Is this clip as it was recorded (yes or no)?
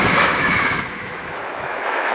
no